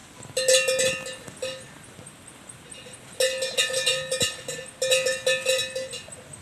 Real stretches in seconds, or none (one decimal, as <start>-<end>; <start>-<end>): 0.0-6.4